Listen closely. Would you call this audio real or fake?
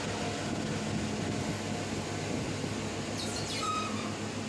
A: real